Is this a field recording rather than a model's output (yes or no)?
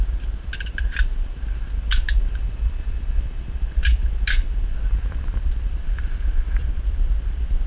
yes